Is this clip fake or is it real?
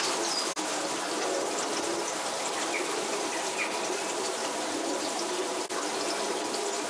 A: real